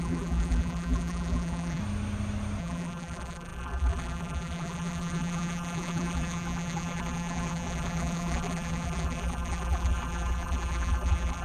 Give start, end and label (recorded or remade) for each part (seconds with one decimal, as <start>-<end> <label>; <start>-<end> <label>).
0.0-1.8 remade; 1.8-2.6 recorded; 2.6-11.4 remade